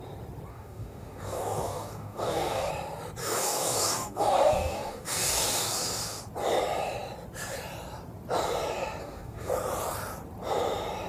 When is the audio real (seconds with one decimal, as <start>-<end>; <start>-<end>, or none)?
0.0-0.5; 2.7-3.2; 6.2-9.0; 9.5-11.1